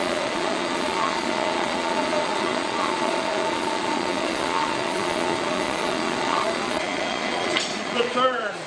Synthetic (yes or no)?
yes